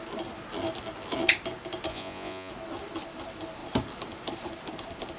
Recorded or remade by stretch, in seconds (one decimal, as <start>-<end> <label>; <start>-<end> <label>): 0.0-1.9 recorded; 1.9-2.5 remade; 2.5-5.2 recorded